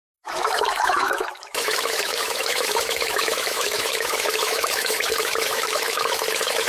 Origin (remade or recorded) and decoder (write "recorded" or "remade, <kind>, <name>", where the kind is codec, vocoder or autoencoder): remade, autoencoder, DAC-VAE